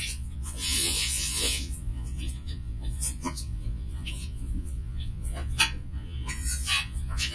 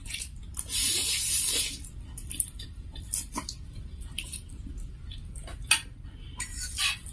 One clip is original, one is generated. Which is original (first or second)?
second